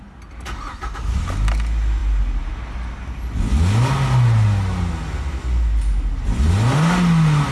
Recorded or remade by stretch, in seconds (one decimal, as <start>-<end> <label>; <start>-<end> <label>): 0.0-7.5 recorded